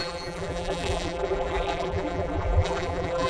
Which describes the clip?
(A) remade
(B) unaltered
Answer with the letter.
A